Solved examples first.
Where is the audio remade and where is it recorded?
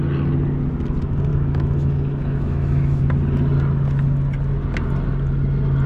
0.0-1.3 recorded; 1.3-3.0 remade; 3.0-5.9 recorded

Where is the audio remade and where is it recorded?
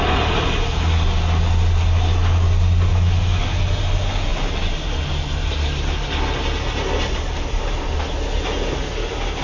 0.0-2.9 recorded; 2.9-3.4 remade; 3.4-9.4 recorded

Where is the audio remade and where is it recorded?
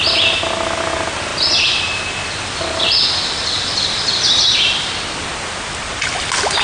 0.0-6.6 recorded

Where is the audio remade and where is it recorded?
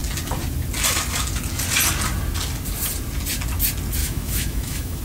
0.0-4.0 recorded; 4.0-5.0 remade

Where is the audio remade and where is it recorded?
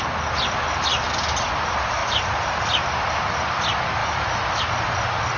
0.0-4.0 recorded; 4.0-4.6 remade; 4.6-5.4 recorded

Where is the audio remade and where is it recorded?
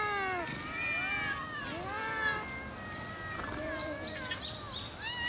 0.0-5.3 recorded